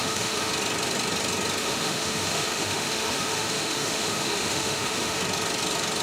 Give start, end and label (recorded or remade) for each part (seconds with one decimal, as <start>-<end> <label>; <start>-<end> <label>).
0.0-0.5 remade; 0.5-1.6 recorded; 1.6-5.2 remade; 5.2-6.0 recorded